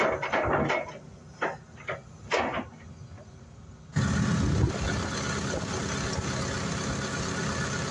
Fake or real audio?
real